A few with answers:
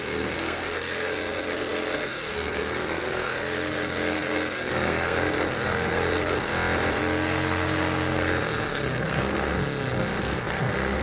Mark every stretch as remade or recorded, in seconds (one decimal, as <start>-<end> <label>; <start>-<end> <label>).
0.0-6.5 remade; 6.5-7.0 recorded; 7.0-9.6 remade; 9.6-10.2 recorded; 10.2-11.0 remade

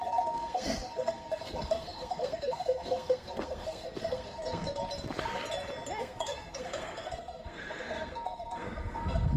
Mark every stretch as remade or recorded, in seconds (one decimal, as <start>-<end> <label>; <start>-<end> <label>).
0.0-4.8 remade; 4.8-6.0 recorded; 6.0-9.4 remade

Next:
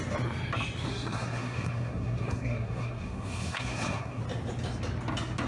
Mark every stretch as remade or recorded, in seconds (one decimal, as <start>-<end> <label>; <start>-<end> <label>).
0.0-0.9 recorded; 0.9-4.2 remade; 4.2-5.5 recorded

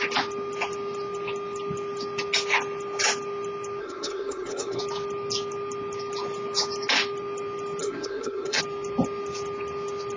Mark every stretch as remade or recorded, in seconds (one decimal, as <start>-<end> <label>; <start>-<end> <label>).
0.0-3.8 recorded; 3.8-4.8 remade; 4.8-7.8 recorded; 7.8-8.6 remade; 8.6-10.2 recorded

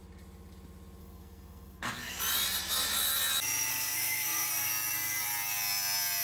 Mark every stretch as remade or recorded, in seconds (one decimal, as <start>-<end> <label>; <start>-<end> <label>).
0.0-1.0 recorded; 1.0-2.2 remade; 2.2-3.7 recorded; 3.7-4.7 remade; 4.7-6.2 recorded